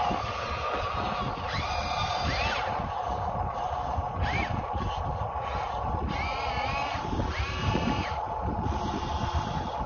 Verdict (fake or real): real